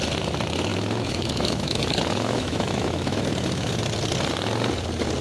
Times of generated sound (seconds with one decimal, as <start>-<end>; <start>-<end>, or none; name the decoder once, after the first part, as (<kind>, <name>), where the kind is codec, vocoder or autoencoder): 0.7-3.8 (autoencoder, DAC-VAE)